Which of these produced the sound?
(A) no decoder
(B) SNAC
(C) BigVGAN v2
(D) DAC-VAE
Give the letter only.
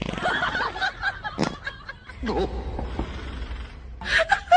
A